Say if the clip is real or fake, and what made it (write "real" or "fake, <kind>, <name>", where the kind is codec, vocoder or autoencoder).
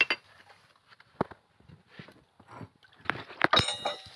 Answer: real